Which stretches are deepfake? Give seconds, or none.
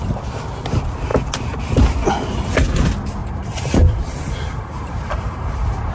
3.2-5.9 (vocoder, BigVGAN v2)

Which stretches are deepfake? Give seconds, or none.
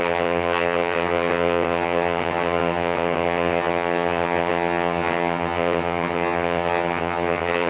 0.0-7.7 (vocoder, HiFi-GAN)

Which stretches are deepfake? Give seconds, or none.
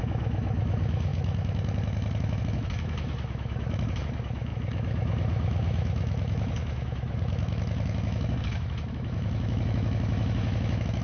0.0-11.0 (autoencoder, DAC-VAE)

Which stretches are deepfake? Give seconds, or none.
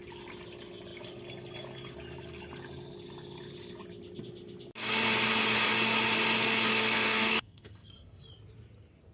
6.7-8.2 (codec, SNAC)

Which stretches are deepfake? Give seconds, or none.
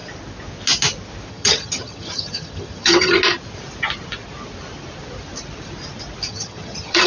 1.3-3.2 (vocoder, HiFi-GAN); 6.3-7.1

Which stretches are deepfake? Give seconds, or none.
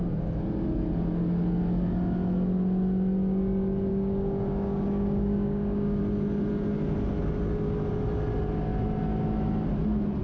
3.9-6.0 (codec, DAC)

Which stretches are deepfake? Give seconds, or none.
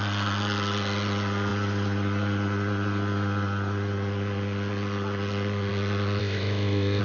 6.2-7.0 (codec, ZipCodec)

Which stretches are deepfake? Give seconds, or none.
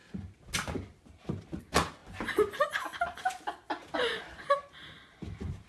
none